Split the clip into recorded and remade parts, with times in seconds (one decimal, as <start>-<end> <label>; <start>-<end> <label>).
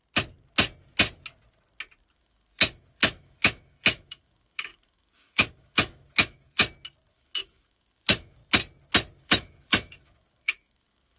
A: 0.0-2.1 recorded; 2.1-6.6 remade; 6.6-7.1 recorded; 7.1-8.4 remade; 8.4-9.2 recorded; 9.2-11.2 remade